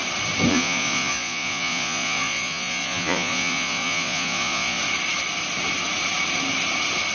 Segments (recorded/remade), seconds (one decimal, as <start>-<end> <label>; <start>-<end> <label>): 0.0-0.5 recorded; 0.5-4.8 remade; 4.8-7.1 recorded

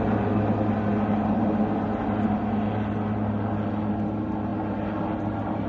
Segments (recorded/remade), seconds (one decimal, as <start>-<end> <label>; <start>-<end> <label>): 0.0-5.7 recorded

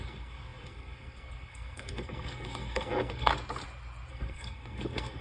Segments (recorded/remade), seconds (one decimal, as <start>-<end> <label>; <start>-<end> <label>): 0.0-3.3 remade; 3.3-4.1 recorded; 4.1-5.2 remade

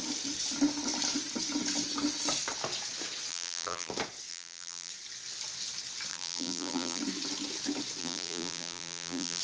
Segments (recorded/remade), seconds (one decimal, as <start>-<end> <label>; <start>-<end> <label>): 0.0-3.3 recorded; 3.3-3.9 remade; 3.9-4.3 recorded; 4.3-4.9 remade; 4.9-6.1 recorded; 6.1-7.0 remade; 7.0-8.0 recorded; 8.0-9.4 remade